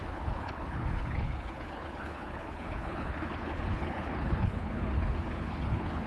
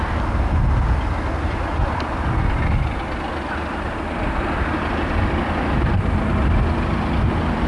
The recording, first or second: second